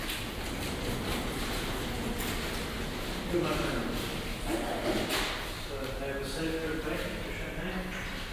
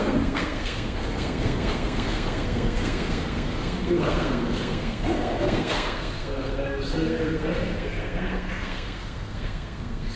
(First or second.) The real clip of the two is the first